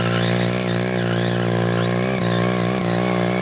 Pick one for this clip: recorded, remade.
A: recorded